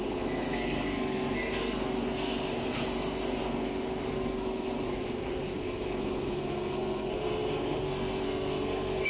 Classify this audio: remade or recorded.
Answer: remade